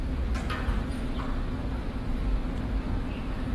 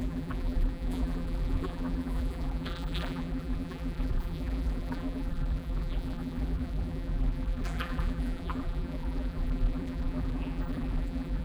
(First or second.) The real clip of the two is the first